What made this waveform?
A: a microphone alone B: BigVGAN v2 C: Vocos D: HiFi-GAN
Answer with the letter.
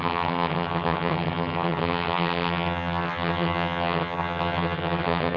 D